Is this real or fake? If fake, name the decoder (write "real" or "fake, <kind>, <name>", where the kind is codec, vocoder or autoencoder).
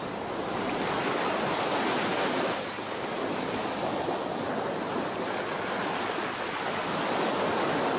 real